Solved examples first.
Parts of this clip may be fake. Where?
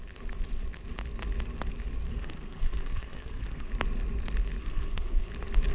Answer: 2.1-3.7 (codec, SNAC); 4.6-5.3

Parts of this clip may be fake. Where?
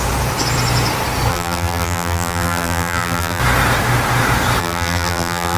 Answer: 1.3-3.4 (vocoder, BigVGAN v2); 4.6-5.6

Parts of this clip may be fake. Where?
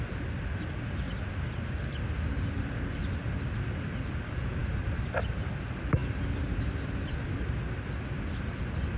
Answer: none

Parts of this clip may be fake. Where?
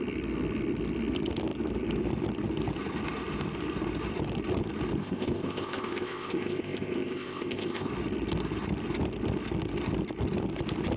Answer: 5.0-7.9 (codec, ZipCodec)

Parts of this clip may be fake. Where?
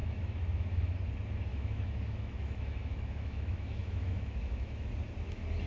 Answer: 0.0-0.9 (autoencoder, DAC-VAE); 1.5-4.9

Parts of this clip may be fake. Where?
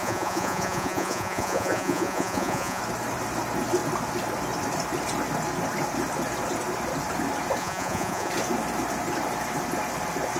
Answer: 0.0-2.8 (vocoder, Vocos); 7.6-8.3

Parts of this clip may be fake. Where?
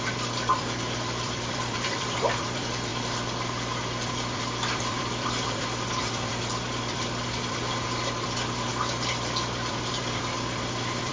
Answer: 0.0-2.9 (vocoder, BigVGAN v2); 4.1-8.7; 9.7-11.1